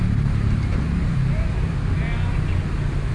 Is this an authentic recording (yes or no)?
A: yes